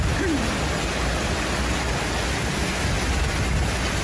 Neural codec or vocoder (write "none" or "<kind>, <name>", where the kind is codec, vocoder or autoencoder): none